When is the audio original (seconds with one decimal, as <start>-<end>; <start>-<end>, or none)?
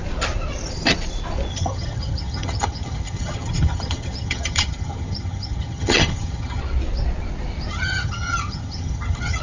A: 0.0-1.5; 6.6-7.7